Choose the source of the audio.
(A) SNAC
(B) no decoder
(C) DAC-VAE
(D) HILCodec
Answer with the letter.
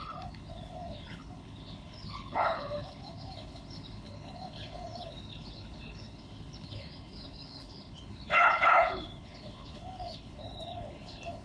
D